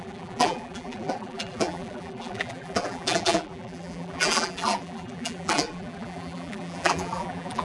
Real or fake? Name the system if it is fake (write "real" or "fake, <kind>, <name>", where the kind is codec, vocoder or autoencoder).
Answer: fake, vocoder, BigVGAN v2